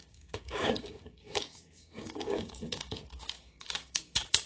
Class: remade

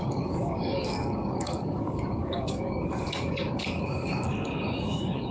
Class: remade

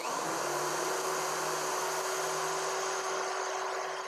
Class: recorded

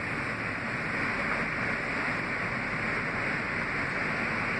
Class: recorded